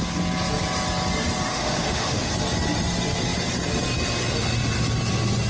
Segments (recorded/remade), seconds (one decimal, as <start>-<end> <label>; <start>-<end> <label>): 0.0-1.5 recorded; 1.5-2.3 remade; 2.3-5.5 recorded